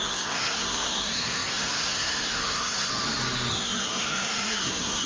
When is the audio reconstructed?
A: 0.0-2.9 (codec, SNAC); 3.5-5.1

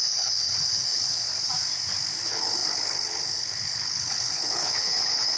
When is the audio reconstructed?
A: 0.0-1.3 (codec, HILCodec); 2.1-5.4

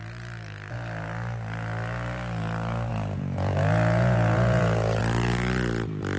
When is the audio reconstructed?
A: 2.9-5.0 (vocoder, Vocos)

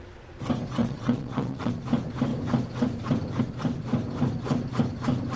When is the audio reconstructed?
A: 0.8-1.7 (vocoder, WaveNeXt)

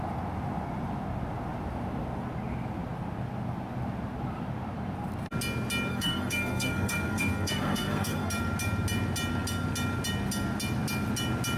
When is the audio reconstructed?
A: 5.9-8.3 (codec, SNAC)